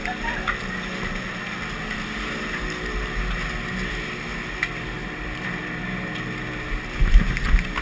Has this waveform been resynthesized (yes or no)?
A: no